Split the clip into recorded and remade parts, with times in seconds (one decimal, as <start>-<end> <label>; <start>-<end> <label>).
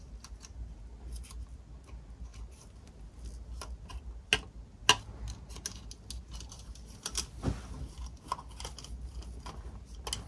0.0-10.3 recorded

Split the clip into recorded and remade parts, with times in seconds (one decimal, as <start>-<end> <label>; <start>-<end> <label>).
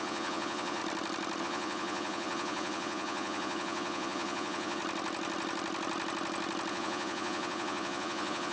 0.0-0.8 remade; 0.8-1.4 recorded; 1.4-4.8 remade; 4.8-6.7 recorded; 6.7-8.5 remade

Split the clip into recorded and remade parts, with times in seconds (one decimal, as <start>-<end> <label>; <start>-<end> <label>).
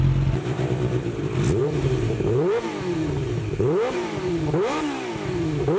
0.0-1.6 recorded; 1.6-5.1 remade; 5.1-5.8 recorded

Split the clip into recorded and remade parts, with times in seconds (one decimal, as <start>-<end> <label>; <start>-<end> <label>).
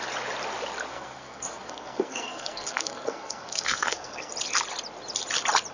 0.0-0.9 recorded; 0.9-4.3 remade; 4.3-5.7 recorded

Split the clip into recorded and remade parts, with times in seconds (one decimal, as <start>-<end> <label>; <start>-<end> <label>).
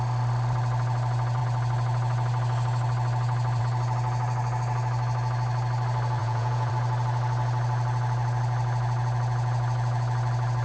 0.0-6.2 recorded; 6.2-6.7 remade; 6.7-10.6 recorded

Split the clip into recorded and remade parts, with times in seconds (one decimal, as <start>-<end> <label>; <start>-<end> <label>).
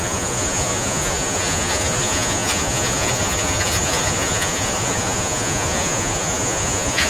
0.0-7.1 remade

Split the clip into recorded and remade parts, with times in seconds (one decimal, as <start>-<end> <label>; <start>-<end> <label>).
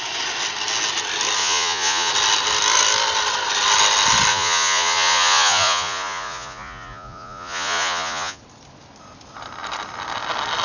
0.0-1.4 recorded; 1.4-2.1 remade; 2.1-4.3 recorded; 4.3-8.4 remade; 8.4-10.6 recorded